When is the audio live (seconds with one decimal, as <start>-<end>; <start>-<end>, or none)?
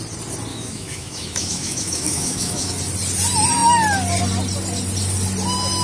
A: 0.0-0.5; 2.8-5.8